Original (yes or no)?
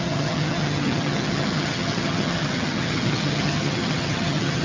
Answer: no